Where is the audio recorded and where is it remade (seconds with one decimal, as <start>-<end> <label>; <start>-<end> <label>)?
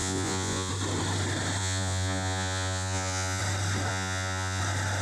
0.0-0.7 remade; 0.7-1.6 recorded; 1.6-3.4 remade; 3.4-3.9 recorded; 3.9-4.6 remade; 4.6-5.0 recorded